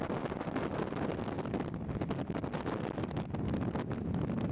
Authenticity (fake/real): real